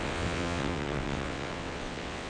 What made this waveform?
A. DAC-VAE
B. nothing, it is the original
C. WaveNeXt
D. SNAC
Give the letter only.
C